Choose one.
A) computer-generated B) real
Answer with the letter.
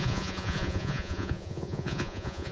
A